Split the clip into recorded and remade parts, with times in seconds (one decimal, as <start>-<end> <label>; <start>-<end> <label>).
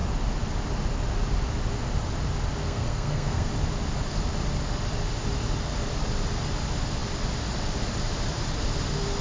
0.0-2.6 recorded; 2.6-3.5 remade; 3.5-9.2 recorded